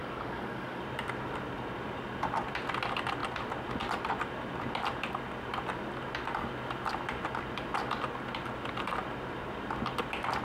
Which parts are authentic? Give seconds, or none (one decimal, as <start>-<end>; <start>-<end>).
0.8-10.4